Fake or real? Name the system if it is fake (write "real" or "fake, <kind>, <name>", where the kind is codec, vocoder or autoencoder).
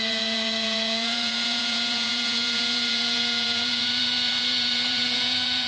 fake, vocoder, Vocos